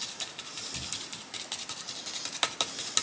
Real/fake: real